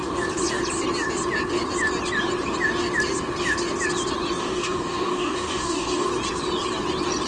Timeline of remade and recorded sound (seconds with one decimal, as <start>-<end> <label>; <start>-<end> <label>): 0.0-4.4 recorded; 4.4-6.1 remade; 6.1-7.3 recorded